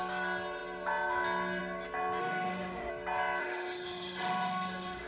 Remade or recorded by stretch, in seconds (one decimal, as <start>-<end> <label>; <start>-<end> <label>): 0.0-2.2 recorded; 2.2-2.9 remade; 2.9-3.4 recorded; 3.4-5.1 remade